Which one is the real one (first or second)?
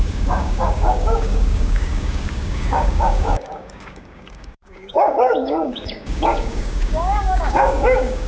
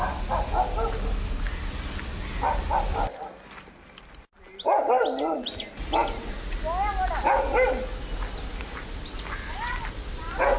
second